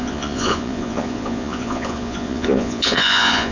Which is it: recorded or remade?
remade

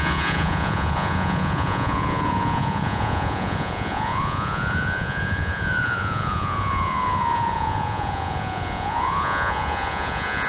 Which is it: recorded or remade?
remade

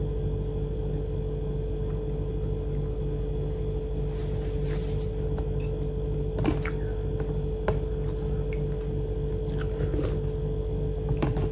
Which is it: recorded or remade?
recorded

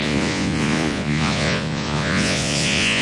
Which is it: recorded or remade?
remade